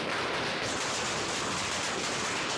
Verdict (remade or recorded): recorded